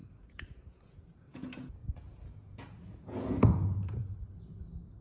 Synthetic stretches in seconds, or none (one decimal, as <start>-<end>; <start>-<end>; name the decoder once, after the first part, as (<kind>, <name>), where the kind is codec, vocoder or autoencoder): 0.0-5.0 (vocoder, Vocos)